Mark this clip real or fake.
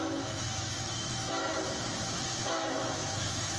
fake